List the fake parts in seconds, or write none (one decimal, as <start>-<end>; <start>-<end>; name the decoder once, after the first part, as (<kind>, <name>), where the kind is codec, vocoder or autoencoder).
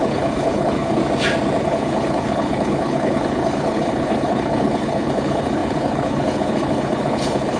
0.0-1.0 (codec, HILCodec); 1.6-7.6